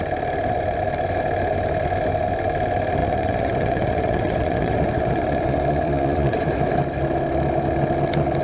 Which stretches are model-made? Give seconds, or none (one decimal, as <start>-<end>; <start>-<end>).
3.0-6.5